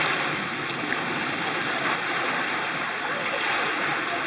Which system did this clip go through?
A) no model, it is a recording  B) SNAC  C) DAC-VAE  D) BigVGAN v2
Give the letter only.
D